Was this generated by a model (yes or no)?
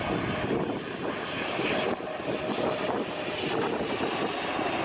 no